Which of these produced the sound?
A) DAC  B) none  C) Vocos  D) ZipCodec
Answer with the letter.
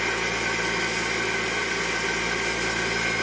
B